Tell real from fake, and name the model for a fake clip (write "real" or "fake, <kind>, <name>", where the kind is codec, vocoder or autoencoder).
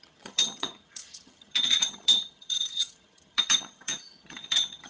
fake, vocoder, HiFi-GAN